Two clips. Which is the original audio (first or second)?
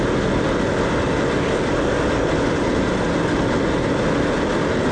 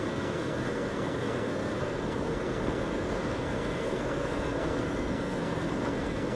first